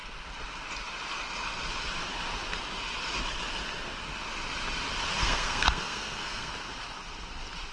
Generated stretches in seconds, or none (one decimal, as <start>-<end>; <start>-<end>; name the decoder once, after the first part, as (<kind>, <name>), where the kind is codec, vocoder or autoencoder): 5.2-6.5 (codec, SNAC)